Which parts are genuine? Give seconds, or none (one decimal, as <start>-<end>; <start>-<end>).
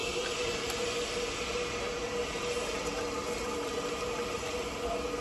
1.3-2.2; 3.9-5.2